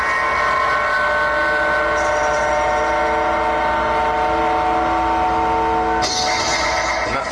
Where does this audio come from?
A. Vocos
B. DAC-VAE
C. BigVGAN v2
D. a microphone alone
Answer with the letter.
D